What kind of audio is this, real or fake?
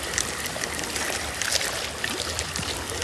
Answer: real